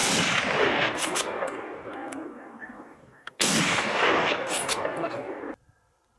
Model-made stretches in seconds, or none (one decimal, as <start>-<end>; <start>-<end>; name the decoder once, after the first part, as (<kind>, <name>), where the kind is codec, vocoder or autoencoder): 0.6-5.4 (codec, DAC)